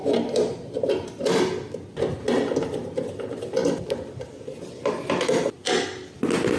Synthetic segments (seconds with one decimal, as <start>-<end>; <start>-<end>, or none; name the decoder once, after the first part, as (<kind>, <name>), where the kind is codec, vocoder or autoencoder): 0.0-1.4 (vocoder, BigVGAN v2)